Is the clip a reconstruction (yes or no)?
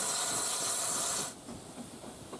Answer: no